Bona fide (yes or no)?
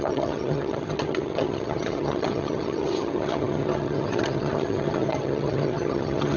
no